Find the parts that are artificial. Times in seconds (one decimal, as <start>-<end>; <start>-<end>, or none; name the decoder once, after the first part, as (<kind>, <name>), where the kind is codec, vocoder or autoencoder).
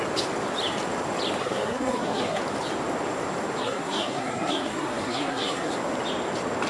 1.4-2.4 (codec, SNAC); 3.6-5.7